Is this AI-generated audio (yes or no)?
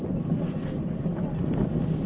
no